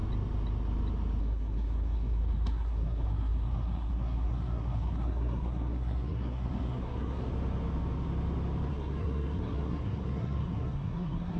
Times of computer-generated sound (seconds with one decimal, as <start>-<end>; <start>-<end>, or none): 1.2-7.3; 8.7-11.4

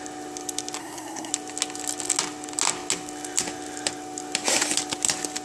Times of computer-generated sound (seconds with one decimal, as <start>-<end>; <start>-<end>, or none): 0.8-1.3

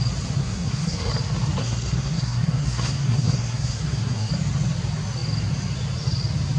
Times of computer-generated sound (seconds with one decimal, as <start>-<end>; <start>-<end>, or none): 0.4-1.1; 1.6-4.3

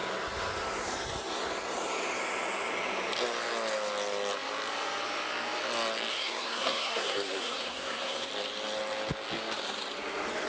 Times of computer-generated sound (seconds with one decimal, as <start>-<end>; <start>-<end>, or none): 6.1-8.3

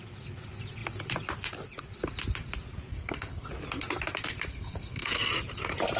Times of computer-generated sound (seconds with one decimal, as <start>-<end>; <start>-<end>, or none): 2.9-3.5; 4.5-5.3

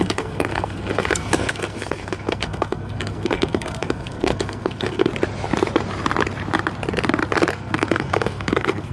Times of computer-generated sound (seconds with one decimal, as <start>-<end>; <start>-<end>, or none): 0.0-5.1; 7.5-8.9

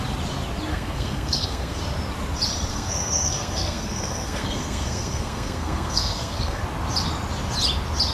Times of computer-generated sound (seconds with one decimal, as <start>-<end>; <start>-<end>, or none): 0.7-1.8; 2.7-6.6